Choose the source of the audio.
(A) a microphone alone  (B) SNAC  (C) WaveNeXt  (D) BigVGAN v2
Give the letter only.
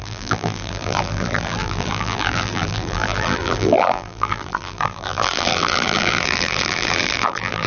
D